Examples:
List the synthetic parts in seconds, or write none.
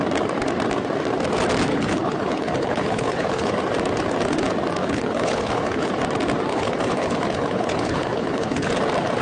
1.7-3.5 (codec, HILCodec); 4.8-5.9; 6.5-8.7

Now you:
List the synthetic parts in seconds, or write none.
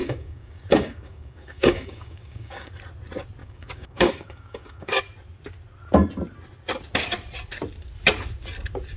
0.0-2.7 (codec, DAC); 3.4-5.0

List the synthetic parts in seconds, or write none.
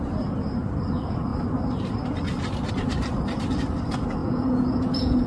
4.2-5.3 (vocoder, Vocos)